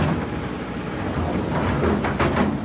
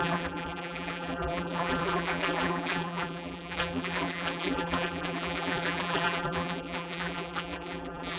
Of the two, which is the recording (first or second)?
first